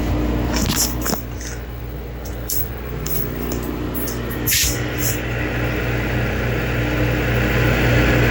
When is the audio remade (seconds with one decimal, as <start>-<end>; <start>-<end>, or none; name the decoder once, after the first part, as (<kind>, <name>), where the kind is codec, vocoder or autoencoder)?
none